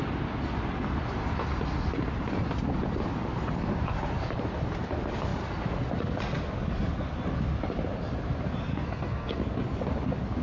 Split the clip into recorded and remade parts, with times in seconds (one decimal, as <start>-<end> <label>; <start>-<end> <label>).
0.0-8.7 recorded; 8.7-9.4 remade; 9.4-10.4 recorded